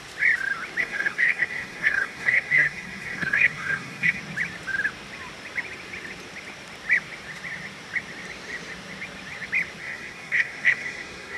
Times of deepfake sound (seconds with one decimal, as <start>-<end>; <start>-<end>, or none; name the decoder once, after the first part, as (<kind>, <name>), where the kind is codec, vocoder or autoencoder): 0.8-4.2 (codec, SNAC); 9.8-11.4